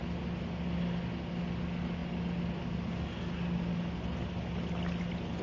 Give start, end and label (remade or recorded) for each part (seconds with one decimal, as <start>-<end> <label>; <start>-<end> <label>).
0.0-5.4 recorded